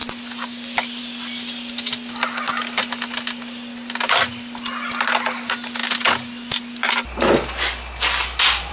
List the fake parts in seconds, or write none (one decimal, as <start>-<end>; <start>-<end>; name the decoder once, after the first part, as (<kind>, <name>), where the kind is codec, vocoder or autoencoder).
none